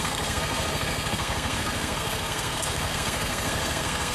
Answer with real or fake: fake